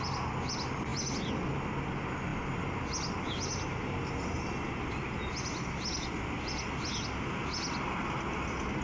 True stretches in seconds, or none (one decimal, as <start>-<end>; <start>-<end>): 0.0-8.8